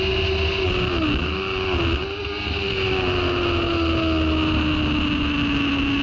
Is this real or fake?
real